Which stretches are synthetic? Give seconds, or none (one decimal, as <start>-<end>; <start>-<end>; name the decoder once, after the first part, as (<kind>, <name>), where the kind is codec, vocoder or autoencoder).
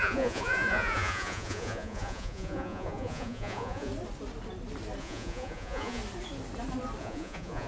0.0-3.9 (vocoder, Vocos); 5.0-6.0; 7.0-7.7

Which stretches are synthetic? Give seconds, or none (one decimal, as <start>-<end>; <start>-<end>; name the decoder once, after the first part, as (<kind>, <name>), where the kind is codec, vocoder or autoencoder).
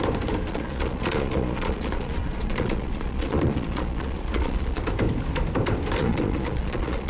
0.5-4.8 (vocoder, Vocos); 6.0-7.1